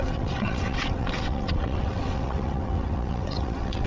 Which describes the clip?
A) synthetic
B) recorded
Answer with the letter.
A